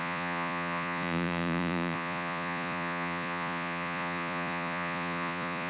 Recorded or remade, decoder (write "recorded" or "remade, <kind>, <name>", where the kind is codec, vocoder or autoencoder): remade, vocoder, Vocos